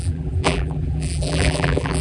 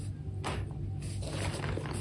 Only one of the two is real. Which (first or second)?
second